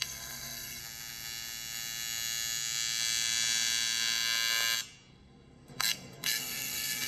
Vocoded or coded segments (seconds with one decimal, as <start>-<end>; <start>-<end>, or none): 0.0-0.8; 5.1-7.1